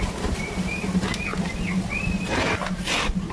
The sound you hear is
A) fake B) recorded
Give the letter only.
B